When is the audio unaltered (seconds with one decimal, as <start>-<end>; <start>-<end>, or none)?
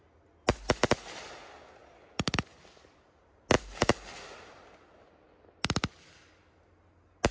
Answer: 0.0-7.3